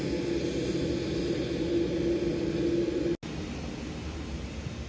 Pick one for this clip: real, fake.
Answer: real